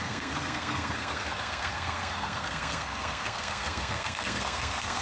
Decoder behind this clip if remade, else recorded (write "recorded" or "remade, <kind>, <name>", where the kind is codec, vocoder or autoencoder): remade, codec, SNAC